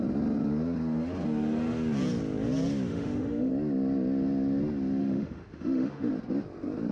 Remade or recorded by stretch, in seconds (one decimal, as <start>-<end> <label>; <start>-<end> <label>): 0.0-2.9 recorded; 2.9-3.5 remade; 3.5-5.0 recorded; 5.0-6.1 remade; 6.1-6.9 recorded